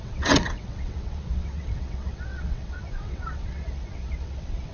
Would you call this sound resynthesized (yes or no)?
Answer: yes